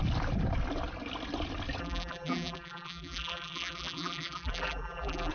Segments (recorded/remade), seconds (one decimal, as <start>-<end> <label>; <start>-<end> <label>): 0.0-1.8 recorded; 1.8-5.3 remade